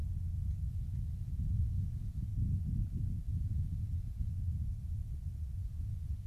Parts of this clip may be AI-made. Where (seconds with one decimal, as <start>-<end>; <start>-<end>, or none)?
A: 0.7-2.3; 3.2-4.3; 5.6-6.3